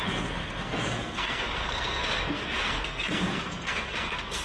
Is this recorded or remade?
remade